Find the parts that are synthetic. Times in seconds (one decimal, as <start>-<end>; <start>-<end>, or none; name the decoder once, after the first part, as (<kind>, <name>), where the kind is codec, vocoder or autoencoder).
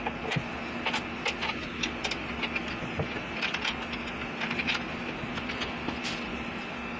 none